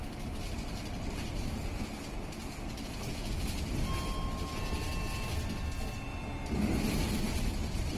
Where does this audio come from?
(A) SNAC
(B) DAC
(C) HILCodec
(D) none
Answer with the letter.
D